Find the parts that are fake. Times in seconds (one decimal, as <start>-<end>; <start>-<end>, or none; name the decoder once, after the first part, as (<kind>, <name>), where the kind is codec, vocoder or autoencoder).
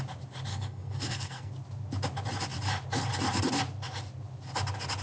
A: 0.5-1.5 (codec, SNAC)